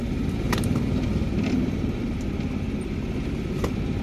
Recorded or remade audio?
recorded